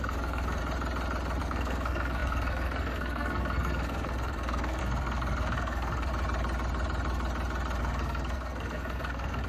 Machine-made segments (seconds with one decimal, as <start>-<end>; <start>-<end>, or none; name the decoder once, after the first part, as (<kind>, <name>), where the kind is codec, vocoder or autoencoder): 0.0-0.6 (codec, SNAC); 1.4-6.1; 7.8-9.5